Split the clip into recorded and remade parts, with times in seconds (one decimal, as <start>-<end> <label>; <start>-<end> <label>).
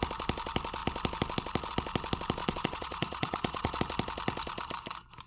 0.0-2.4 recorded; 2.4-3.8 remade; 3.8-5.3 recorded